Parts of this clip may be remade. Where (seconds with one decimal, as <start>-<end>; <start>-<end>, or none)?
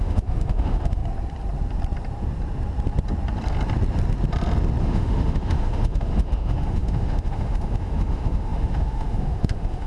0.0-1.0; 4.8-9.9